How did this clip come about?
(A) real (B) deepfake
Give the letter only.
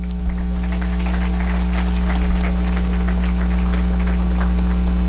A